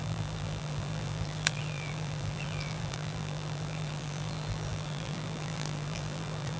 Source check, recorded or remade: remade